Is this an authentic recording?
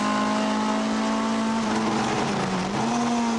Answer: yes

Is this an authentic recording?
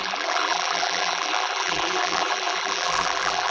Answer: no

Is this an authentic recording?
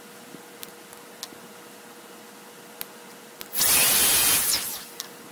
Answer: yes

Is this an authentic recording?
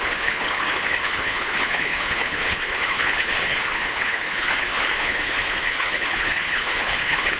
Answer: no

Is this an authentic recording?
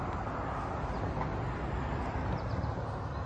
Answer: yes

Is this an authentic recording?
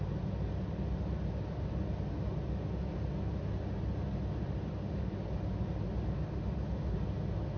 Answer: yes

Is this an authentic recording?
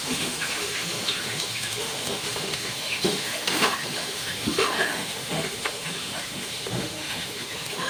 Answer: no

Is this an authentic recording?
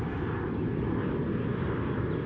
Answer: yes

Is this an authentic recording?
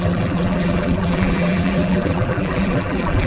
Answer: no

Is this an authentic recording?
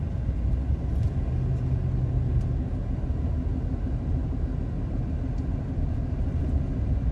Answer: yes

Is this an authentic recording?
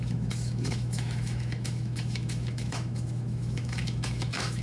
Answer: no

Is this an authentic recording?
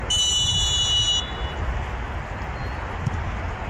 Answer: yes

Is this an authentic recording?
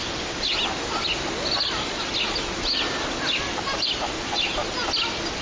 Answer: yes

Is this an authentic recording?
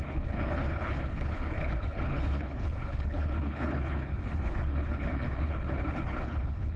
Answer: no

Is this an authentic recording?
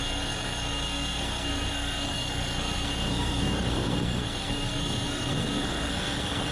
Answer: no